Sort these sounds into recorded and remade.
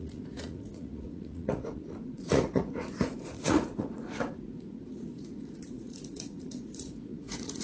remade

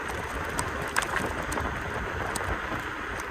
recorded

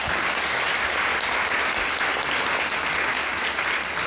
recorded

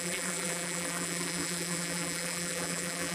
remade